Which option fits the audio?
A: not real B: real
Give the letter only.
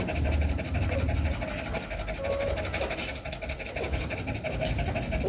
B